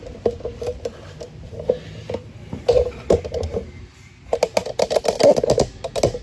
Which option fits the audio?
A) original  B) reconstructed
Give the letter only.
A